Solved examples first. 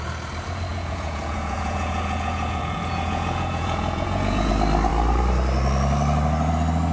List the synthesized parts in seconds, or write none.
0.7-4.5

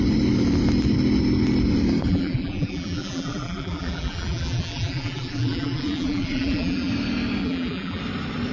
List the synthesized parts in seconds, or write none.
2.1-6.9; 7.4-8.0

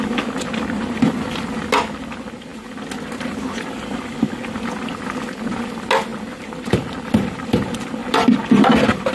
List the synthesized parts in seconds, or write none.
6.1-6.7; 8.0-8.6

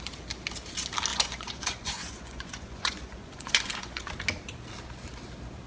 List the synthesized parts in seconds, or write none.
1.1-4.1

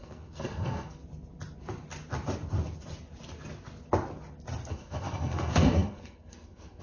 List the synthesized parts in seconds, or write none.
0.0-1.0; 4.7-6.8

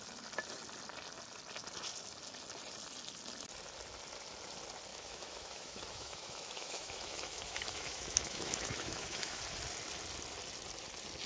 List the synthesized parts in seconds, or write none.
4.9-9.4

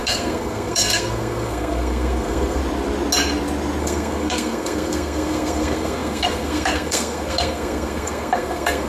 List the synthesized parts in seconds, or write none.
0.0-2.6; 3.8-8.9

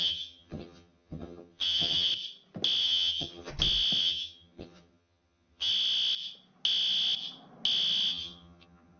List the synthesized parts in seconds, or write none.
0.0-2.1; 2.8-3.5; 4.0-5.7; 8.1-9.0